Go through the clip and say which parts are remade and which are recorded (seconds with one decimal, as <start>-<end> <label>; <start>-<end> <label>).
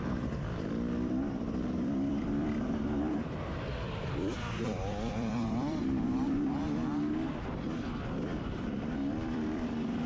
0.0-6.6 remade; 6.6-7.5 recorded; 7.5-10.1 remade